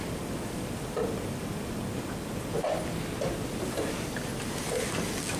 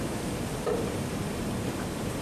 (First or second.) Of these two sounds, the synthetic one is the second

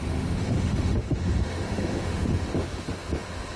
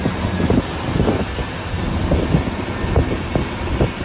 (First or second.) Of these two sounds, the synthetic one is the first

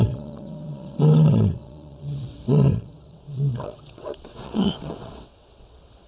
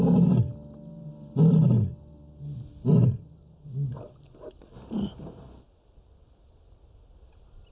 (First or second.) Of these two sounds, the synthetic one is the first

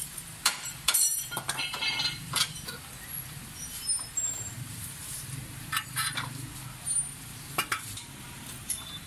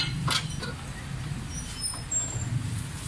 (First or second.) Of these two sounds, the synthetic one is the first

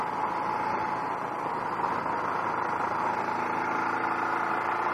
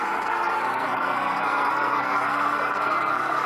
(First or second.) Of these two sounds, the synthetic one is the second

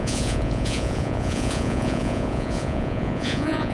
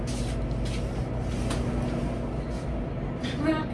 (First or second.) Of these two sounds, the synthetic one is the first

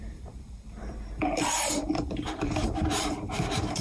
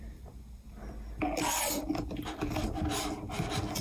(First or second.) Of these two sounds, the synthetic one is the first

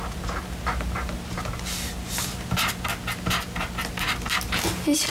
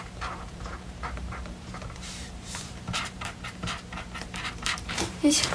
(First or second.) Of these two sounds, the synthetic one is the second